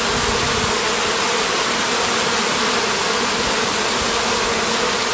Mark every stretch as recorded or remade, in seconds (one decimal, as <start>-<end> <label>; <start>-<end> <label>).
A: 0.0-5.1 recorded